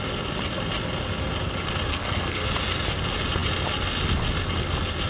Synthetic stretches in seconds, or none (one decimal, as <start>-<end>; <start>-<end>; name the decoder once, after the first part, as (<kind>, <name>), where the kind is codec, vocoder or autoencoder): 1.9-2.5 (codec, SNAC)